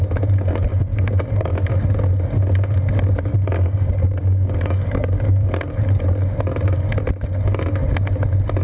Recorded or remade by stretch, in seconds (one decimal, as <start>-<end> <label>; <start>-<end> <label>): 0.0-0.7 recorded; 0.7-1.5 remade; 1.5-3.3 recorded; 3.3-5.5 remade; 5.5-8.6 recorded